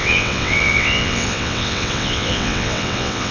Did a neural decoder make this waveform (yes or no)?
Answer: yes